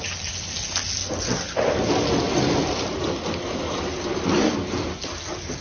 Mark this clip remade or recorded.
recorded